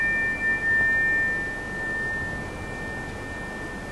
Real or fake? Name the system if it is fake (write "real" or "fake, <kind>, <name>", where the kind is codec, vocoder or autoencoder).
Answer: real